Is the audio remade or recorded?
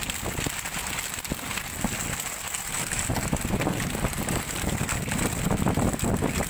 recorded